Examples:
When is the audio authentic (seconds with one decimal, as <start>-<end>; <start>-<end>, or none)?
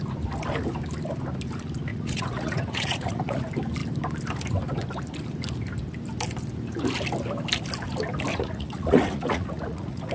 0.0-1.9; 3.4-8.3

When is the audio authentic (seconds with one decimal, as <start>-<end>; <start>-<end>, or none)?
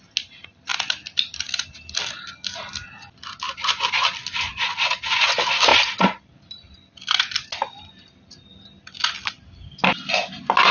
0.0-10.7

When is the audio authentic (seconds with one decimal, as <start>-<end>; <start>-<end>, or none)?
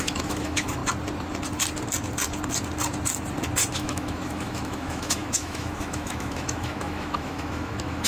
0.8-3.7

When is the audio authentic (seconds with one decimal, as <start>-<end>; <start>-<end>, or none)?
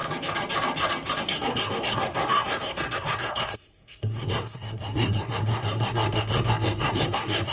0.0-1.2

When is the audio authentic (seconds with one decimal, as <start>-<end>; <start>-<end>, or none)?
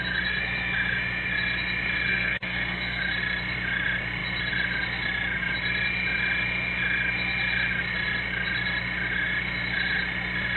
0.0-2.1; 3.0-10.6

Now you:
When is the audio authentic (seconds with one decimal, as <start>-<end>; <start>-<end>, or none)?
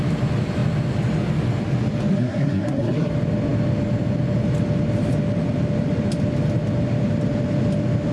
0.0-2.1; 3.1-8.1